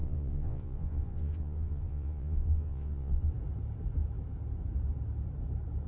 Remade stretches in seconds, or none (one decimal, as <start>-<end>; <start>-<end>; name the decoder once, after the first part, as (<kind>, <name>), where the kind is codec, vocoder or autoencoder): 0.0-3.3 (vocoder, Vocos)